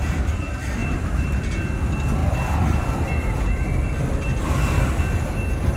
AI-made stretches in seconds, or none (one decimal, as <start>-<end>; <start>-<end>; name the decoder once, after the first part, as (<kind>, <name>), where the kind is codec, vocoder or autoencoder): 0.8-1.4 (vocoder, BigVGAN v2)